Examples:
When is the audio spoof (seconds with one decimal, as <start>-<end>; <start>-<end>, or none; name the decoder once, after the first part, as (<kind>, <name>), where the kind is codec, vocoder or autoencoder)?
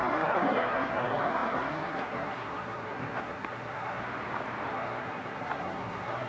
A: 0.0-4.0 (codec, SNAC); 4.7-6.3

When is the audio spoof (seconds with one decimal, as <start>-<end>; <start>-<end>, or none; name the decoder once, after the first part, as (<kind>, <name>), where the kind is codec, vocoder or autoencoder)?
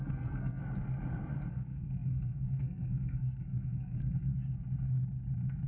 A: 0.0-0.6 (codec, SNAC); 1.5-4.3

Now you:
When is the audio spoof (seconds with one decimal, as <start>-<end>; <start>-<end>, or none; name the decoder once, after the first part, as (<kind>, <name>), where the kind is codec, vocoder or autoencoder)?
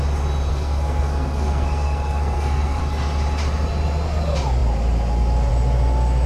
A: 0.5-2.8 (codec, SNAC)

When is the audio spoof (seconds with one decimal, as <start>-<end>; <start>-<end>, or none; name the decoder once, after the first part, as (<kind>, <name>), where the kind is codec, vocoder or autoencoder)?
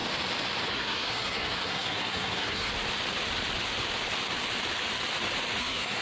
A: 0.7-2.7 (codec, SNAC); 5.6-6.0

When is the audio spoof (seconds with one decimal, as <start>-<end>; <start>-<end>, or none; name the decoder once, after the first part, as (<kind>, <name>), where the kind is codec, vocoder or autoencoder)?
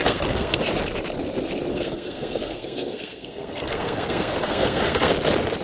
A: 0.0-0.6 (codec, SNAC); 1.7-5.1